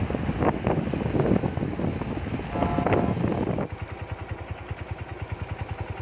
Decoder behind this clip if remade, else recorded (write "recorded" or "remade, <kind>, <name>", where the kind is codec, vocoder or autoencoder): recorded